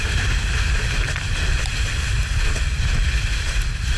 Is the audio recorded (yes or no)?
yes